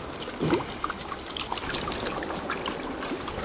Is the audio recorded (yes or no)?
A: yes